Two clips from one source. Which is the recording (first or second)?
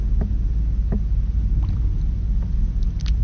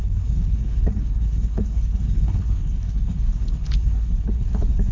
first